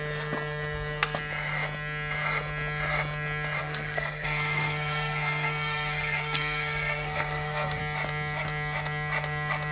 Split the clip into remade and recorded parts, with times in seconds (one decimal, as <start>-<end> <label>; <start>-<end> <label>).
0.0-3.6 recorded; 3.6-7.8 remade; 7.8-9.7 recorded

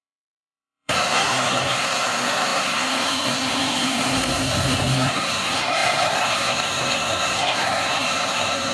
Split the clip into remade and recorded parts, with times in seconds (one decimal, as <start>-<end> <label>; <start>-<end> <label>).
0.0-8.7 remade

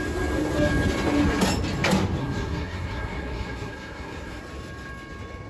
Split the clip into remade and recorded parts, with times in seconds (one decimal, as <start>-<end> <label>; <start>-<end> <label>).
0.0-2.2 recorded; 2.2-4.4 remade; 4.4-5.5 recorded

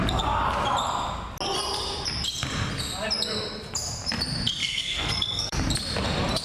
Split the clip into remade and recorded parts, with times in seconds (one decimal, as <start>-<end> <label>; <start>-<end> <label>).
0.0-4.6 recorded; 4.6-5.6 remade; 5.6-6.4 recorded

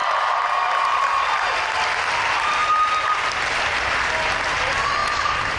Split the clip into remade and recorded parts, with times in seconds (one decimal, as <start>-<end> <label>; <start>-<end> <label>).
0.0-5.0 recorded; 5.0-5.6 remade

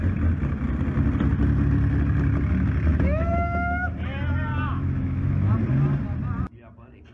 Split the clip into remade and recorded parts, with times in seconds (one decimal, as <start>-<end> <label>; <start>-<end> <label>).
0.0-2.9 recorded; 2.9-3.9 remade; 3.9-4.7 recorded; 4.7-5.5 remade; 5.5-7.1 recorded

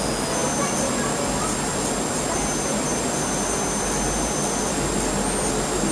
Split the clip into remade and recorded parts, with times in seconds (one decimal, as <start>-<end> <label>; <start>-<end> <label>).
0.0-5.9 recorded

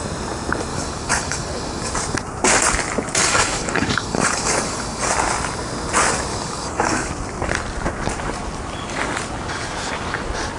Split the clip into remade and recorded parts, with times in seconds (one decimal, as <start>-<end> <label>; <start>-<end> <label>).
0.0-0.7 recorded; 0.7-1.9 remade; 1.9-3.2 recorded; 3.2-5.1 remade; 5.1-6.3 recorded; 6.3-7.1 remade; 7.1-10.6 recorded